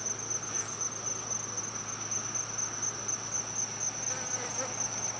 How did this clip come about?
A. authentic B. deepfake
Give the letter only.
A